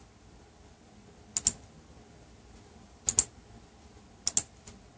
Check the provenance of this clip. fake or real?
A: real